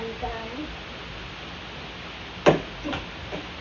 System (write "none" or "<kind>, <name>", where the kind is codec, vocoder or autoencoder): none